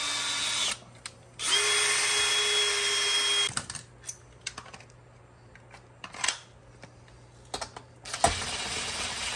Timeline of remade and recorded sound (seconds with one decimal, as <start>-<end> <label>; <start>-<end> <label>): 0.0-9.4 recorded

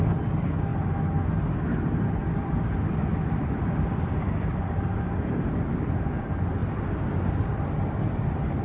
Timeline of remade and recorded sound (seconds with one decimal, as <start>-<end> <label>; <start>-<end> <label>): 0.0-0.7 remade; 0.7-1.5 recorded; 1.5-6.6 remade; 6.6-7.4 recorded; 7.4-8.6 remade

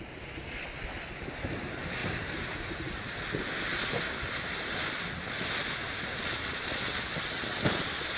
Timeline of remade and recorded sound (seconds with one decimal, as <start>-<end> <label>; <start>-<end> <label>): 0.0-2.0 recorded; 2.0-3.2 remade; 3.2-8.2 recorded

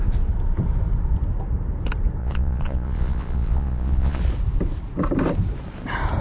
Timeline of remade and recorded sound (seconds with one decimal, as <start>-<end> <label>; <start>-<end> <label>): 0.0-2.2 recorded; 2.2-4.2 remade; 4.2-6.2 recorded

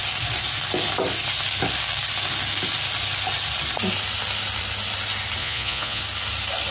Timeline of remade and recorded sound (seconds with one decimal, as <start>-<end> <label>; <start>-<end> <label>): 0.0-5.4 recorded; 5.4-6.0 remade; 6.0-6.7 recorded

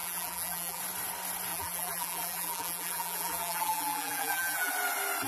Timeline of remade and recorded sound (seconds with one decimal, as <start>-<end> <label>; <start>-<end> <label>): 0.0-0.8 remade; 0.8-1.5 recorded; 1.5-4.7 remade; 4.7-5.3 recorded